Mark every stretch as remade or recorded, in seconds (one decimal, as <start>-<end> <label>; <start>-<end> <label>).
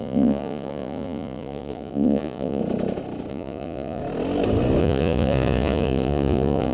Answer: 0.0-2.6 remade; 2.6-3.3 recorded; 3.3-4.0 remade; 4.0-4.8 recorded; 4.8-6.7 remade